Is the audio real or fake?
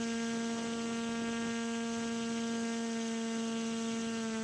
real